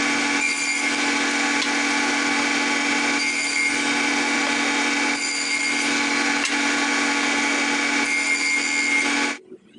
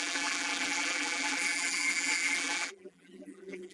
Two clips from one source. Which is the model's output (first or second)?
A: second